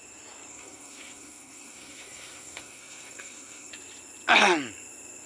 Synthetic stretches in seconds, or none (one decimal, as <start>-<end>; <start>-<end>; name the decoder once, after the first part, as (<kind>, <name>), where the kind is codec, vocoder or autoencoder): 0.5-3.7 (codec, SNAC)